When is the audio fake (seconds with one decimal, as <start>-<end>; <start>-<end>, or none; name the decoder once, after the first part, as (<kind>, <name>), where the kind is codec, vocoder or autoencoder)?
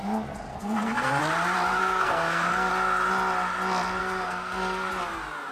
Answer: 0.5-1.2 (codec, SNAC); 1.8-2.7; 4.0-4.9